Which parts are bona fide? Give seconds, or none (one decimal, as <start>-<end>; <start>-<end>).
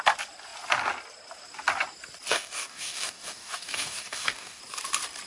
0.0-2.3; 4.6-5.3